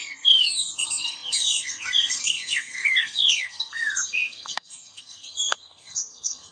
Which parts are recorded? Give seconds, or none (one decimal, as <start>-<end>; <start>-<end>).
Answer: none